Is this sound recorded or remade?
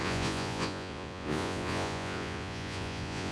remade